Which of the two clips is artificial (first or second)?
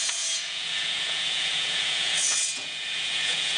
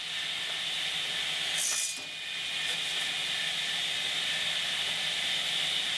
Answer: first